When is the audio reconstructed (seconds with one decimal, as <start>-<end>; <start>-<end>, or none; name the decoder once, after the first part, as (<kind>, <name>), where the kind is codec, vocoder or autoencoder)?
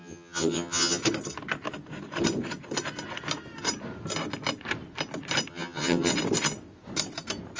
0.0-1.0 (vocoder, HiFi-GAN); 5.5-6.1